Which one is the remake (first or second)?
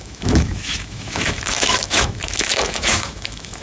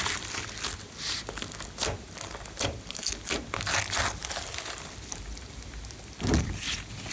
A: first